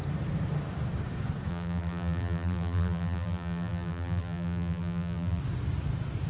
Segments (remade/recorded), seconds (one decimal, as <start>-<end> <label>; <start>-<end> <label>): 0.0-1.5 recorded; 1.5-5.4 remade; 5.4-6.3 recorded